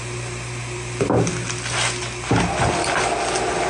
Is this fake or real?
real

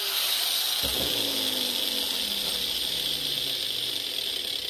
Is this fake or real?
real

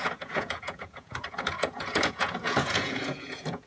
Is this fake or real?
fake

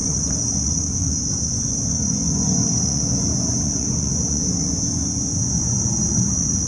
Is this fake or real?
fake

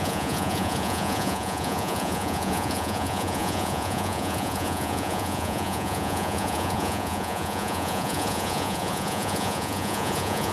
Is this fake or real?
fake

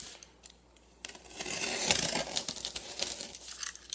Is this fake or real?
real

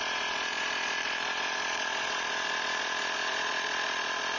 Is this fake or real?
fake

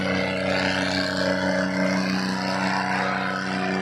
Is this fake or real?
real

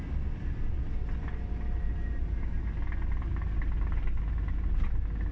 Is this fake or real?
real